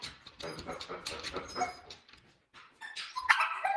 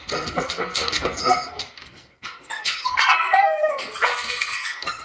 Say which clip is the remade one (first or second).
second